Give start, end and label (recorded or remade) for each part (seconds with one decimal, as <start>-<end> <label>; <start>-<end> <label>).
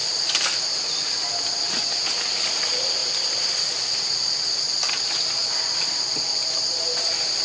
0.0-3.0 recorded; 3.0-4.1 remade; 4.1-5.4 recorded; 5.4-6.2 remade; 6.2-7.4 recorded